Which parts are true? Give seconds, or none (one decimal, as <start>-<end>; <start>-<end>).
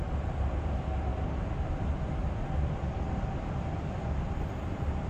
none